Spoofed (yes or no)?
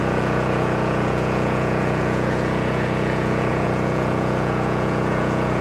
yes